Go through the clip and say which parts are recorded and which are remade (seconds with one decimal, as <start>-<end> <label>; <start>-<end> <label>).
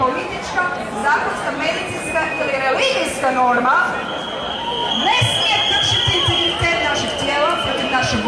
0.0-8.3 recorded